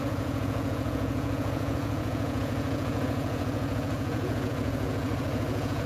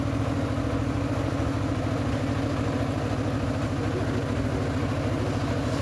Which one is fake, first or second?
first